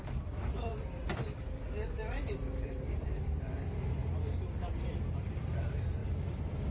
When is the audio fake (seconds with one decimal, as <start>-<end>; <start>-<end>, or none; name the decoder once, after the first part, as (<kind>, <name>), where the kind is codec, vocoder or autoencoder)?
0.0-0.7 (vocoder, BigVGAN v2); 2.2-4.0; 5.1-6.7